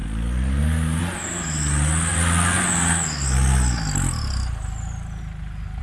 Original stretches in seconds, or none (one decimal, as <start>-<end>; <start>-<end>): 0.0-5.8